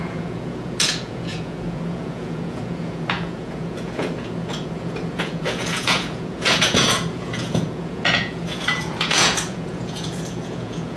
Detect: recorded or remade remade